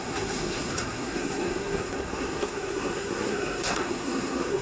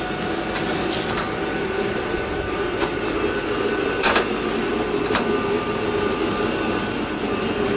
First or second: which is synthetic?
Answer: first